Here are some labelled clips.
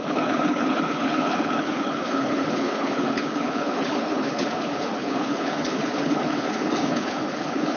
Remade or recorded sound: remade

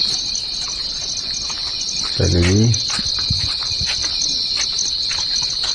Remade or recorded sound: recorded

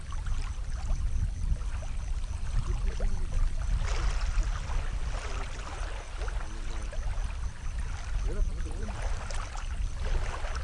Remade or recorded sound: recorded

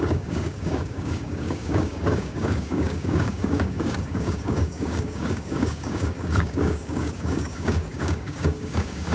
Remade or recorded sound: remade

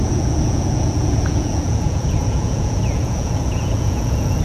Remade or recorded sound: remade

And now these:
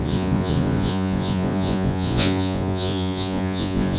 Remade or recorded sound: remade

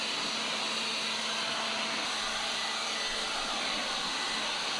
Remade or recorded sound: recorded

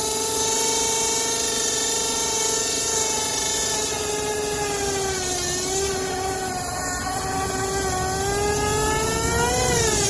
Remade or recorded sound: recorded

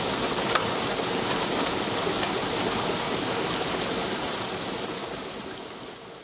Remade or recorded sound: recorded